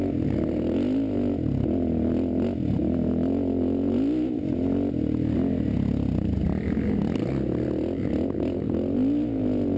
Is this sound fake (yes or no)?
no